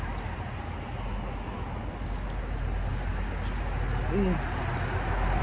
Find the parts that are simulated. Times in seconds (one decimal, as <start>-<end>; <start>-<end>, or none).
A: none